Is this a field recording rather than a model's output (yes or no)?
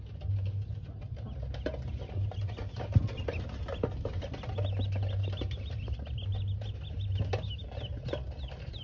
yes